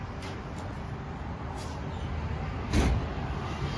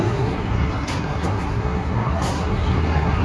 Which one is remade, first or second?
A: second